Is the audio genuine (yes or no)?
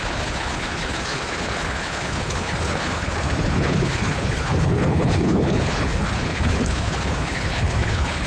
no